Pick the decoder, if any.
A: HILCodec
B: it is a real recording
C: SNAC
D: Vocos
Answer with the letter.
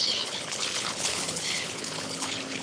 A